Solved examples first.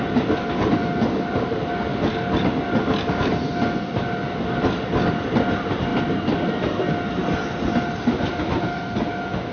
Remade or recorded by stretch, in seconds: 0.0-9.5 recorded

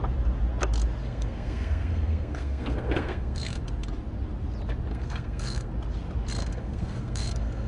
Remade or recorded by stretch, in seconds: 0.0-1.0 recorded; 1.0-3.6 remade; 3.6-4.9 recorded; 4.9-5.7 remade; 5.7-6.4 recorded; 6.4-7.7 remade

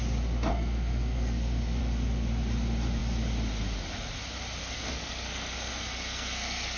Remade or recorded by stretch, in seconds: 0.0-0.5 recorded; 0.5-1.8 remade; 1.8-4.6 recorded; 4.6-6.8 remade

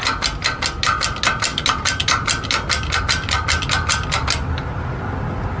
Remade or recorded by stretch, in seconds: 0.0-5.6 recorded

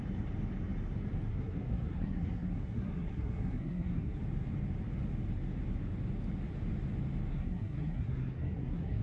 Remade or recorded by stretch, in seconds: 0.0-1.3 recorded; 1.3-4.2 remade; 4.2-7.3 recorded; 7.3-9.0 remade